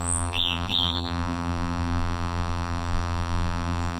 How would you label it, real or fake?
fake